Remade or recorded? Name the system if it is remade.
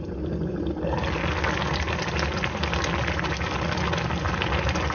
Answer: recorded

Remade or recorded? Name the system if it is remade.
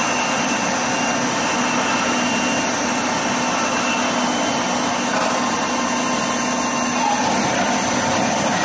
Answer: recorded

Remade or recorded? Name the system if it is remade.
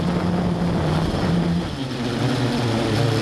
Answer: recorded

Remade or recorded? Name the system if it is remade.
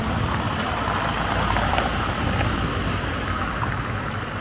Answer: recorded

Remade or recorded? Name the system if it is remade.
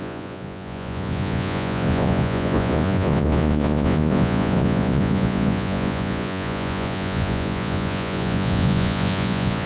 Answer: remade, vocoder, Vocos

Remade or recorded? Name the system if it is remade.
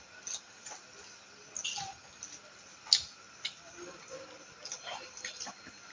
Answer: recorded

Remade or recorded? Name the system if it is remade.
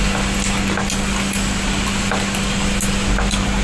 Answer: recorded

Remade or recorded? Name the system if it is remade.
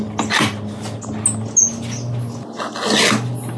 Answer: recorded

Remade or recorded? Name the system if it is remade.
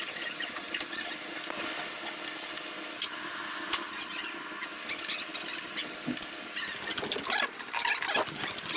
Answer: recorded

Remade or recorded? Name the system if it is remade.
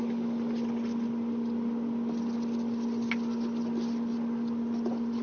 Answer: recorded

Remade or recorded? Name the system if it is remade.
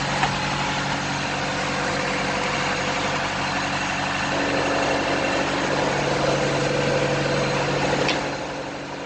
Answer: recorded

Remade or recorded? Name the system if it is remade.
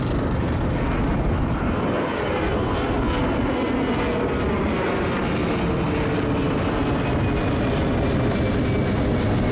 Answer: recorded